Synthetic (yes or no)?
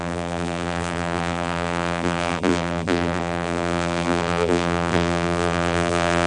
yes